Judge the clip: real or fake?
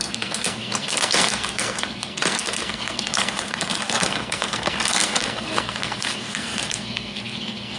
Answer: fake